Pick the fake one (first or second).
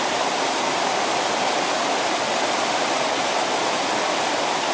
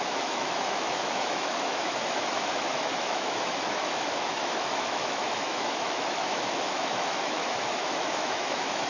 second